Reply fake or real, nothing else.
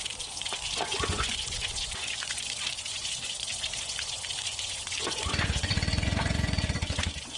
fake